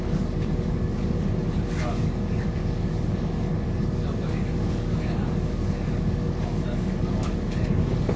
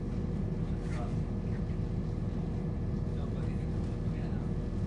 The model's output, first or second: first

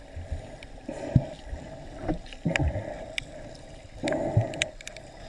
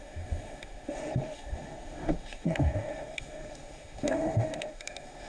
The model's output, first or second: second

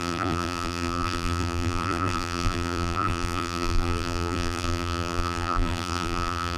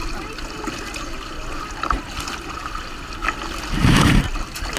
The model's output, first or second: first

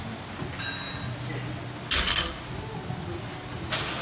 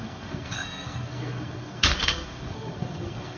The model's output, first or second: second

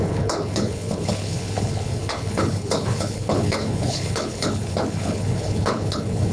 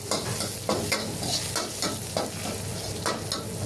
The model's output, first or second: first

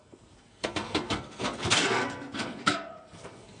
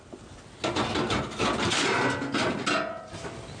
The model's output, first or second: first